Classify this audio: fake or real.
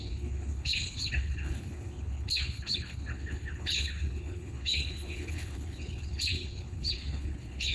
fake